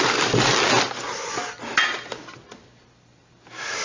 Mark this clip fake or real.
real